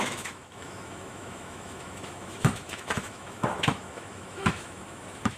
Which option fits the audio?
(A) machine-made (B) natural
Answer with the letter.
A